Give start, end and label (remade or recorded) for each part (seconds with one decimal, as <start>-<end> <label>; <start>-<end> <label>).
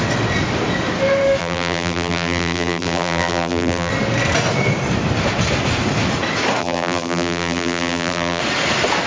0.0-1.4 recorded; 1.4-3.9 remade; 3.9-6.6 recorded; 6.6-8.4 remade; 8.4-9.1 recorded